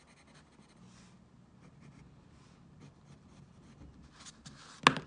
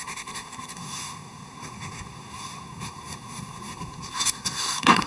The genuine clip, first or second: first